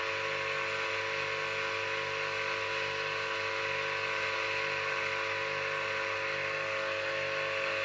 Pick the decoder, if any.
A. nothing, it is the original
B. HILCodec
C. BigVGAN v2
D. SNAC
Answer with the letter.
A